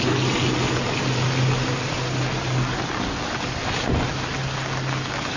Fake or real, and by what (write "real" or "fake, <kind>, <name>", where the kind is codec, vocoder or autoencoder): real